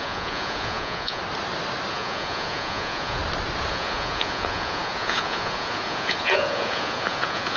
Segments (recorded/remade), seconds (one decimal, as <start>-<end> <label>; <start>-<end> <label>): 0.0-1.2 remade; 1.2-1.9 recorded; 1.9-3.2 remade; 3.2-3.7 recorded; 3.7-7.6 remade